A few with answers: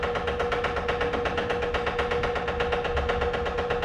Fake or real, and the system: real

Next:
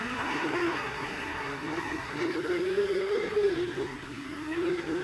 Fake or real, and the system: fake, codec, SNAC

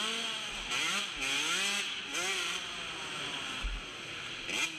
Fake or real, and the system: real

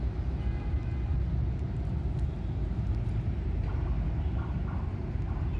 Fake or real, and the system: real